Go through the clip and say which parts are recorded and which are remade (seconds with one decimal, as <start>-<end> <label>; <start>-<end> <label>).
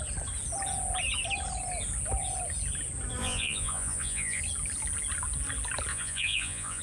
0.0-3.2 recorded; 3.2-4.4 remade; 4.4-5.9 recorded; 5.9-6.8 remade